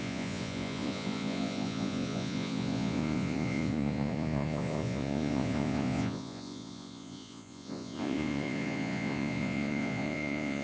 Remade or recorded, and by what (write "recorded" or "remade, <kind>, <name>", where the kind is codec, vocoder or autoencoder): remade, vocoder, Vocos